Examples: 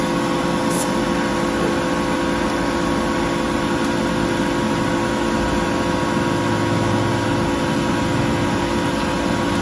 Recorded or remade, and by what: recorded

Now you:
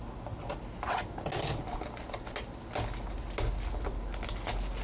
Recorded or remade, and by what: recorded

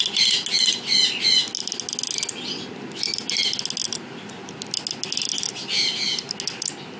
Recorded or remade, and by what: recorded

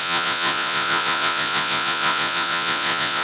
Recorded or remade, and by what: remade, vocoder, Vocos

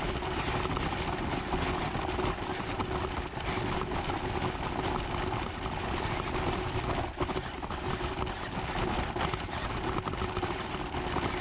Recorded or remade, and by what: recorded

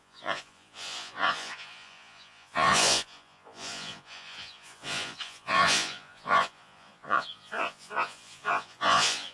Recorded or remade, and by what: remade, vocoder, Vocos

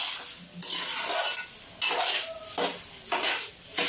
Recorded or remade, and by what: recorded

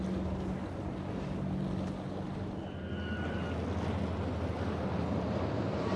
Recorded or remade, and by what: recorded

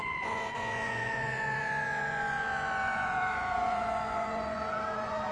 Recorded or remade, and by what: remade, vocoder, Vocos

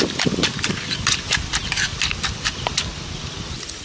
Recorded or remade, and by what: recorded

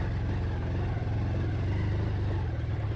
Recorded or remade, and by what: recorded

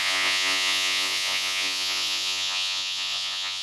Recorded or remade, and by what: remade, vocoder, Vocos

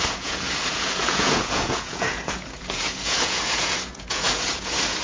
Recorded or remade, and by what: remade, vocoder, Vocos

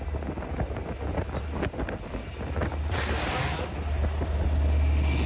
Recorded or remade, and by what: recorded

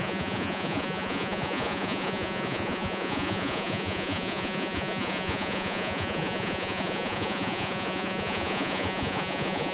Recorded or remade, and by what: remade, vocoder, Vocos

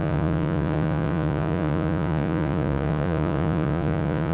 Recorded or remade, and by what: remade, vocoder, Vocos